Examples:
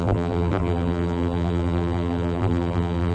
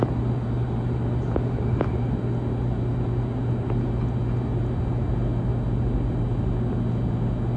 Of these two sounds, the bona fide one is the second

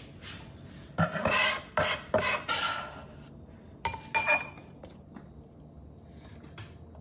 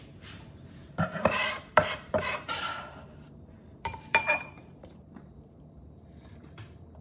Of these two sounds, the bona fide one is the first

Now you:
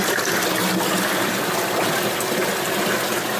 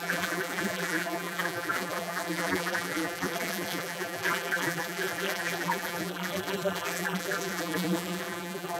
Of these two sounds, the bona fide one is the first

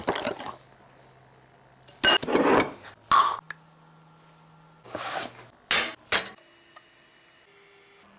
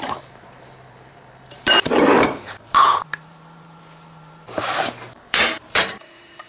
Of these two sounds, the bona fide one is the first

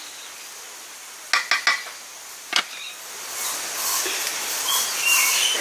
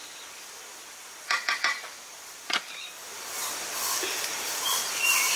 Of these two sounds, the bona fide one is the first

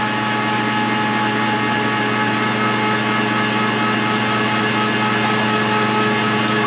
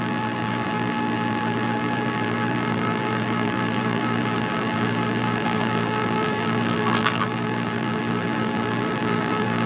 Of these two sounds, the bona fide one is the first